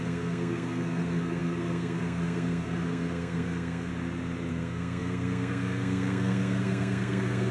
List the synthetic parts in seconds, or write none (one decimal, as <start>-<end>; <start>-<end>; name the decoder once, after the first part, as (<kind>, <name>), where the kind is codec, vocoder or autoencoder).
0.0-3.9 (codec, SNAC); 4.5-7.5